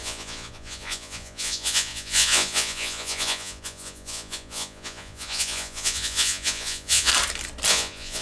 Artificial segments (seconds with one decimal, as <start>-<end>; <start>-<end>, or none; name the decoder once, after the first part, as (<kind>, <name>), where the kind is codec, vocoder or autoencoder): 0.0-7.1 (vocoder, Vocos); 7.7-8.2